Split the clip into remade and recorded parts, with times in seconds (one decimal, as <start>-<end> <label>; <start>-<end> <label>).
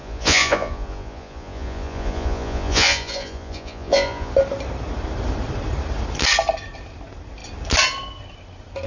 0.0-4.3 remade; 4.3-8.9 recorded